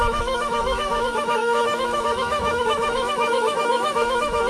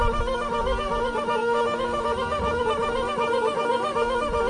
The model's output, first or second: first